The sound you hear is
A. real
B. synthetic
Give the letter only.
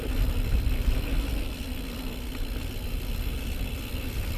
A